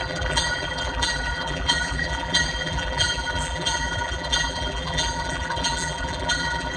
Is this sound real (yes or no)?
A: no